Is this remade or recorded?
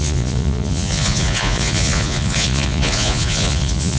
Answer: remade